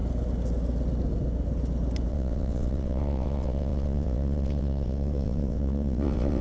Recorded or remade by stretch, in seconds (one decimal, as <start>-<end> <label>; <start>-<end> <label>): 0.0-2.1 recorded; 2.1-6.4 remade